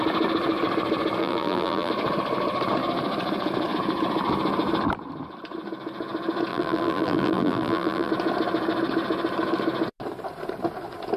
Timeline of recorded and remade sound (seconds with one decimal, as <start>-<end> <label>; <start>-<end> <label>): 0.0-1.2 recorded; 1.2-1.9 remade; 1.9-6.5 recorded; 6.5-8.1 remade; 8.1-11.2 recorded